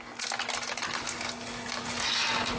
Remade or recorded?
recorded